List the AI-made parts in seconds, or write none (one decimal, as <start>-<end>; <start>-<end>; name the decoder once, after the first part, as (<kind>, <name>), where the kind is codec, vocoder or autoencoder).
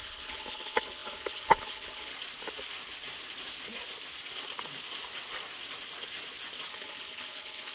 0.0-2.1 (codec, HILCodec); 6.7-7.7